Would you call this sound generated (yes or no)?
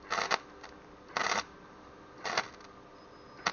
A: no